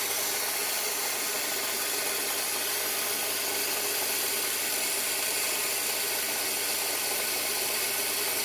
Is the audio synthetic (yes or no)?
no